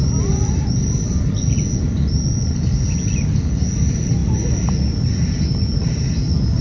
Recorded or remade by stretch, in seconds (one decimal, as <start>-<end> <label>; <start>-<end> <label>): 0.0-6.6 recorded